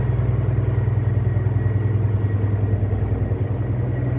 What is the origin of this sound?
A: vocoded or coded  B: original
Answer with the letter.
B